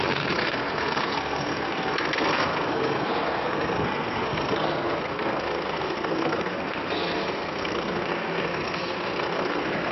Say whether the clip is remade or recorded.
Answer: remade